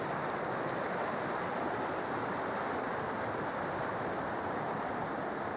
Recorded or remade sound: recorded